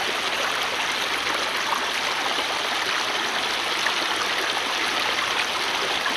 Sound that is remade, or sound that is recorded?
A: recorded